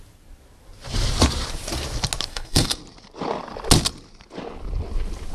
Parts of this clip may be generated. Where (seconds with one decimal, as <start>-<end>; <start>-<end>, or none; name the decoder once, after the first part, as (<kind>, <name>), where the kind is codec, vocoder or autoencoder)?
2.3-2.8 (codec, SNAC)